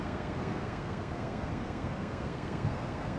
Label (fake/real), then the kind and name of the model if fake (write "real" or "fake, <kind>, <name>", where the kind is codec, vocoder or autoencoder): fake, codec, SNAC